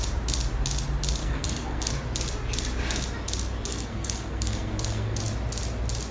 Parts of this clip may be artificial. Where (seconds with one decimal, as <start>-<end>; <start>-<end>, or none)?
1.2-1.9; 3.7-5.2